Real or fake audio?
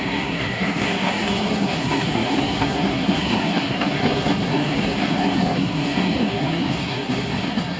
fake